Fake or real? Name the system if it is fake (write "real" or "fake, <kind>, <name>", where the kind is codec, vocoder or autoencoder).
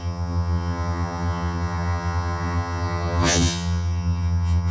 fake, vocoder, HiFi-GAN